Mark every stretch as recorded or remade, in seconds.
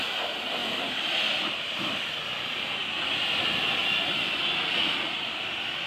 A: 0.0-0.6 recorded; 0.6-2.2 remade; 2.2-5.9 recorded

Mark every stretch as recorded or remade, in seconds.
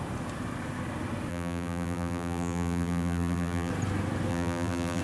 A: 0.0-1.3 recorded; 1.3-3.7 remade; 3.7-4.3 recorded; 4.3-5.0 remade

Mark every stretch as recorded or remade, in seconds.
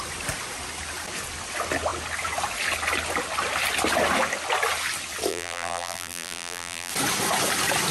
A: 0.0-5.3 recorded; 5.3-6.9 remade; 6.9-7.9 recorded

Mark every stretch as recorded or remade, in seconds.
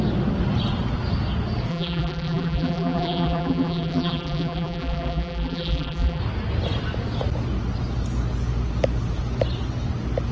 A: 0.0-1.7 recorded; 1.7-6.2 remade; 6.2-10.3 recorded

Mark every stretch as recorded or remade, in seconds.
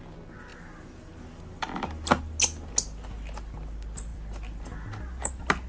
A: 0.0-0.5 recorded; 0.5-2.2 remade; 2.2-5.7 recorded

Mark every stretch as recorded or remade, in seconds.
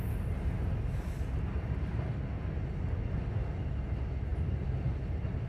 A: 0.0-4.3 recorded; 4.3-5.5 remade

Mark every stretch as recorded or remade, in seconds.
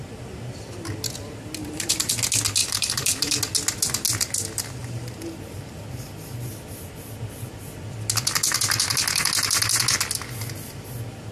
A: 0.0-1.6 recorded; 1.6-2.1 remade; 2.1-2.6 recorded; 2.6-3.4 remade; 3.4-4.8 recorded; 4.8-5.8 remade; 5.8-11.3 recorded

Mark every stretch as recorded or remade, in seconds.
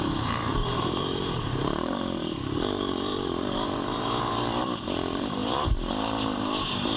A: 0.0-7.0 remade